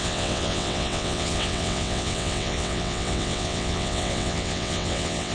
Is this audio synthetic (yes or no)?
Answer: yes